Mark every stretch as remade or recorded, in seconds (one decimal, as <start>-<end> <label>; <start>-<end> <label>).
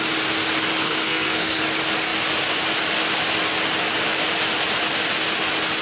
0.0-0.7 recorded; 0.7-1.6 remade; 1.6-5.8 recorded